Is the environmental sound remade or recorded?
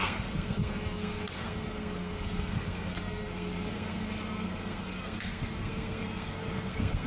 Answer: remade